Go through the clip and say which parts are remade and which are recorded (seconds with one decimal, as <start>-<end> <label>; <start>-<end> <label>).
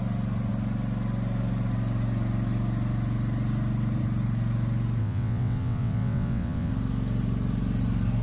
0.0-5.0 recorded; 5.0-6.7 remade; 6.7-8.2 recorded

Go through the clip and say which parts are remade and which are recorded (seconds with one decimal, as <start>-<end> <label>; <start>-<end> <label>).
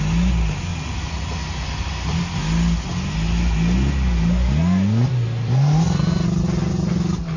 0.0-7.4 recorded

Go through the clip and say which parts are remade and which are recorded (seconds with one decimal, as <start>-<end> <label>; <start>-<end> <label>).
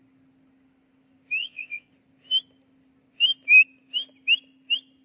0.0-1.4 recorded; 1.4-1.9 remade; 1.9-5.0 recorded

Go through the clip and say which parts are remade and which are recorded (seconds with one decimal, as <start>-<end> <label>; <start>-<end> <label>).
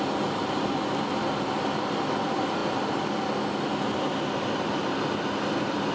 0.0-5.9 recorded